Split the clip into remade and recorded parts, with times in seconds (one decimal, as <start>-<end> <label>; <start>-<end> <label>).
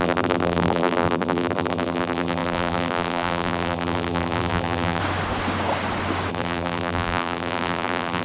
0.0-5.0 remade; 5.0-6.3 recorded; 6.3-8.2 remade